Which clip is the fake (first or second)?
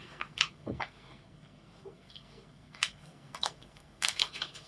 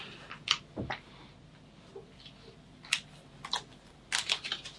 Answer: first